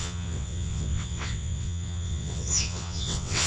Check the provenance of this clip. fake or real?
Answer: fake